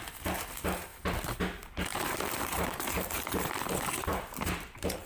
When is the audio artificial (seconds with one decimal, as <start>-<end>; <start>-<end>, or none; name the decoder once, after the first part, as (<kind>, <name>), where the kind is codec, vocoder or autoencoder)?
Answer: 0.9-1.4 (vocoder, BigVGAN v2); 1.9-3.5; 4.1-5.1